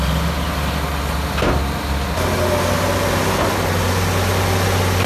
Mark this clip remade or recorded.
recorded